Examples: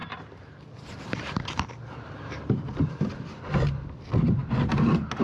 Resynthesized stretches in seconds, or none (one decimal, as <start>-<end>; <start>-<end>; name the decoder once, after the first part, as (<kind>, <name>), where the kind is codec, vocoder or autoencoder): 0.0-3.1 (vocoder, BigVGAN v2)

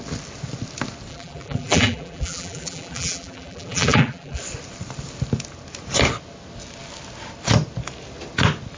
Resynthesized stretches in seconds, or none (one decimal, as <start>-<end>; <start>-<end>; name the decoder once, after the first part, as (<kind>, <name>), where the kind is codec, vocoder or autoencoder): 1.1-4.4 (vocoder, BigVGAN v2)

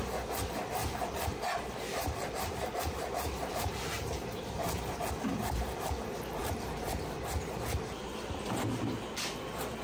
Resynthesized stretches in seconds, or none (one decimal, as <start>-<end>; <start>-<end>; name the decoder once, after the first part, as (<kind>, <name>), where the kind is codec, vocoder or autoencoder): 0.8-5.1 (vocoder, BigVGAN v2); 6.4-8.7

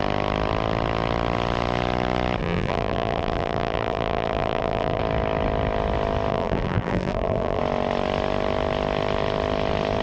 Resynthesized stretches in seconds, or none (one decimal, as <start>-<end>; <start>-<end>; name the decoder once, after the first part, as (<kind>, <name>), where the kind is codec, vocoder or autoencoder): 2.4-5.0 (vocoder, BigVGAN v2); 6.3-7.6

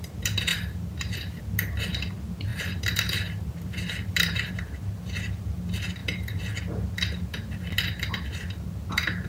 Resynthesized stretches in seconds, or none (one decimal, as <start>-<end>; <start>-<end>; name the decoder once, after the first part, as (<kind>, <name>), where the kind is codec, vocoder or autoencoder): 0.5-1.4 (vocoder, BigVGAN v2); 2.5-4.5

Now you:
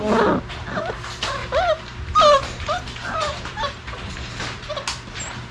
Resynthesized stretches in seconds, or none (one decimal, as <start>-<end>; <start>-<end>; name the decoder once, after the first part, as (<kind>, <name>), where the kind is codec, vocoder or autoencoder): 1.4-4.7 (vocoder, BigVGAN v2)

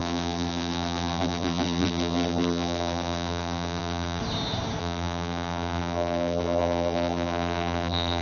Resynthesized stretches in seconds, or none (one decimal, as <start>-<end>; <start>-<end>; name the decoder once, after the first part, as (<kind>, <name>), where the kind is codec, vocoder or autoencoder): 0.0-4.2 (vocoder, BigVGAN v2); 4.8-8.2